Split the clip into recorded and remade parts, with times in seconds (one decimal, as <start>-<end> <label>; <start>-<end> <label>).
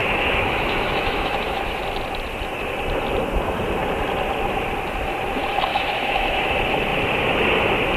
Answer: 0.0-1.8 remade; 1.8-5.7 recorded; 5.7-6.4 remade; 6.4-8.0 recorded